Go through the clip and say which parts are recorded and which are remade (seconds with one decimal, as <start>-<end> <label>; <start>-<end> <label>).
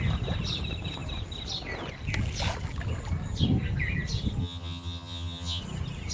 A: 0.0-4.4 recorded; 4.4-5.6 remade; 5.6-6.1 recorded